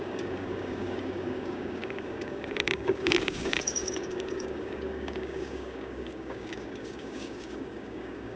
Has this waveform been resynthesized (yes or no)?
yes